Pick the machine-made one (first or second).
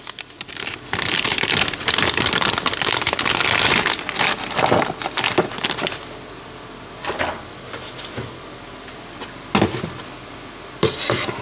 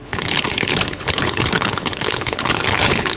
second